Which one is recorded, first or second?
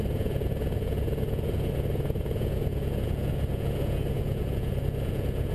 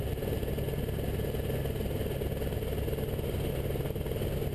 second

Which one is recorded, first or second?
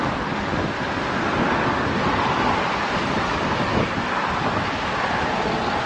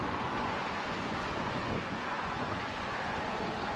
first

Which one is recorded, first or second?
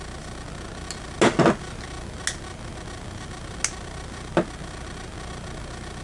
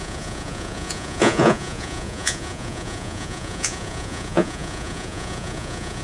first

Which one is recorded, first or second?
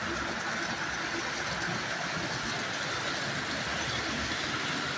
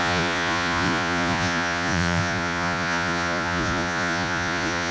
first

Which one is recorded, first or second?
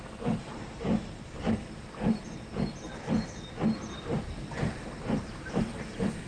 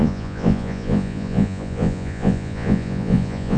first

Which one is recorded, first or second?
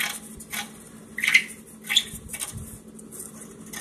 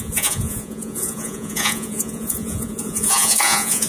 first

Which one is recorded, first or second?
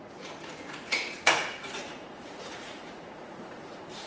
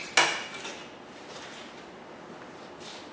second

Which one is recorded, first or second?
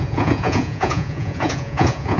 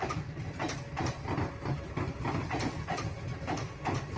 second